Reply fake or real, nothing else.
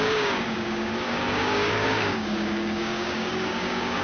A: fake